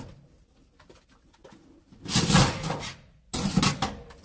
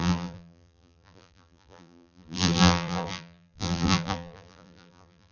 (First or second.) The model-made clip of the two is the second